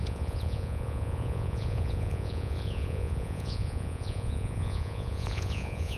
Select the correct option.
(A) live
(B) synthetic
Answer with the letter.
B